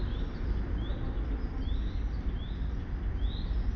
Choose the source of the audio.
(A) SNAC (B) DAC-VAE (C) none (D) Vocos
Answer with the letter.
C